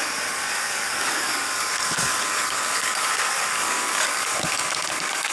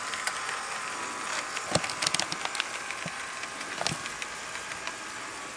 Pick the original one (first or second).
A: second